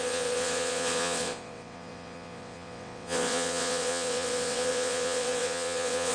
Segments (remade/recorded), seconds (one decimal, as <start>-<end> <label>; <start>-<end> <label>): 0.0-6.1 remade